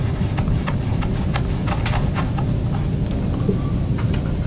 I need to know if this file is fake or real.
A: real